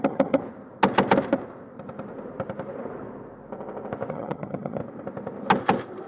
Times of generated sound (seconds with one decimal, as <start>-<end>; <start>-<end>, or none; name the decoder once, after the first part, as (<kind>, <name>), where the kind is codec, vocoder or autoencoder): 0.0-0.4 (vocoder, HiFi-GAN); 4.1-4.8